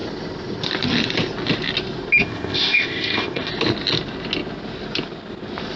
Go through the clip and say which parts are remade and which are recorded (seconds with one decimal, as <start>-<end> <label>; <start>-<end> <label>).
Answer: 0.0-2.2 recorded; 2.2-3.5 remade; 3.5-5.8 recorded